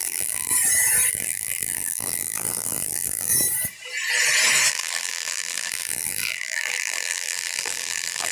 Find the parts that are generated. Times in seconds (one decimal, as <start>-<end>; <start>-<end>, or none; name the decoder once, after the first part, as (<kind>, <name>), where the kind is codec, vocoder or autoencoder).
0.0-0.5 (vocoder, BigVGAN v2); 1.1-3.3; 4.7-8.3